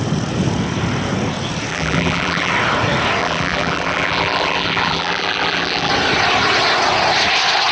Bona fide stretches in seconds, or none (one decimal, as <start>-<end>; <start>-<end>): 0.0-1.7; 2.5-3.2; 5.9-7.7